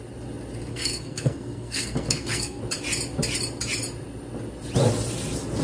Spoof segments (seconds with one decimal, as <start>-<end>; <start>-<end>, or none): 0.7-2.6